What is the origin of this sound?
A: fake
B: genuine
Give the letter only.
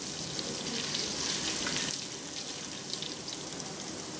B